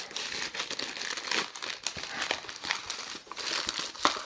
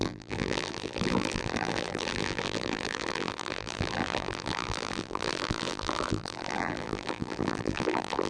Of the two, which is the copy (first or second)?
second